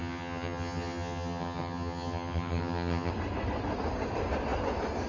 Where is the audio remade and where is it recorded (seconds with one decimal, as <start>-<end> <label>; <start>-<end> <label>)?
0.0-3.1 remade; 3.1-5.1 recorded